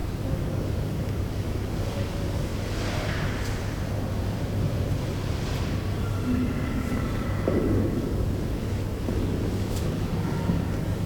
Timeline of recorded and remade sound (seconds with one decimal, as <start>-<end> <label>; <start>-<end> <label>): 0.0-2.5 remade; 2.5-6.5 recorded; 6.5-11.1 remade